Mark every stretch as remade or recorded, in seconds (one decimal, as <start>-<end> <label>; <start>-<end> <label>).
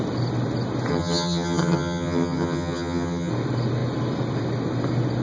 0.0-0.9 recorded; 0.9-3.3 remade; 3.3-5.2 recorded